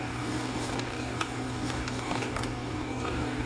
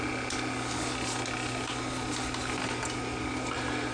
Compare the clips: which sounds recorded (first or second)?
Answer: second